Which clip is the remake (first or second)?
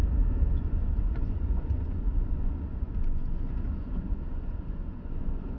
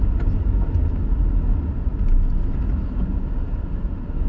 first